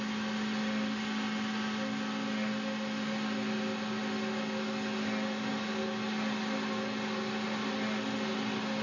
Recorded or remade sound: recorded